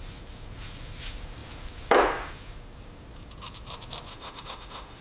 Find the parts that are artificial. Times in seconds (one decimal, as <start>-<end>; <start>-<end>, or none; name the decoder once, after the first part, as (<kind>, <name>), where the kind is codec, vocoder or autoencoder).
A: 4.1-5.0 (autoencoder, DAC-VAE)